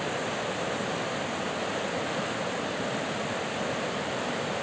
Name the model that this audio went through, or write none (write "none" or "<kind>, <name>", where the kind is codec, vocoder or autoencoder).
none